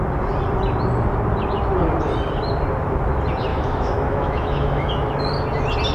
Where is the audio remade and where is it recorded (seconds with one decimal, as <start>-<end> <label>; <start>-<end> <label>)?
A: 0.0-3.5 recorded; 3.5-5.2 remade; 5.2-5.9 recorded